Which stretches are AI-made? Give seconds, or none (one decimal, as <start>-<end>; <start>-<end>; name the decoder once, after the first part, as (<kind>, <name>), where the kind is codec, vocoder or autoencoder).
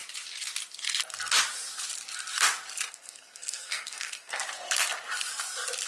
2.9-4.4 (codec, SNAC)